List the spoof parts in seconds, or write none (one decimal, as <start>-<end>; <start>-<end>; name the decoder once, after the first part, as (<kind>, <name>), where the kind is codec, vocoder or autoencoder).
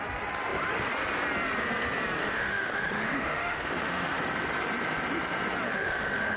2.2-4.2 (autoencoder, DAC-VAE); 5.7-6.4